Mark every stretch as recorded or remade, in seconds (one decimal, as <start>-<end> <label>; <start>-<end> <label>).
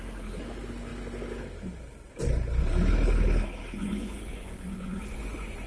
0.0-3.8 recorded; 3.8-5.7 remade